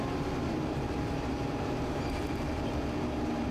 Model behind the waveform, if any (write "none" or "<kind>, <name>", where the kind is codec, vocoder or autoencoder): vocoder, BigVGAN v2